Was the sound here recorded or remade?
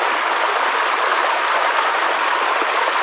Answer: recorded